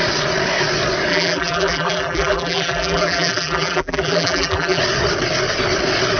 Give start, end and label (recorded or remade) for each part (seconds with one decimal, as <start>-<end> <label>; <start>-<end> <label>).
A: 0.0-1.1 recorded; 1.1-4.8 remade; 4.8-6.2 recorded